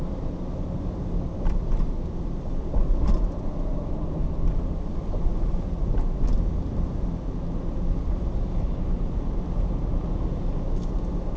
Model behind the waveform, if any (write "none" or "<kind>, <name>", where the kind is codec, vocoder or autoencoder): none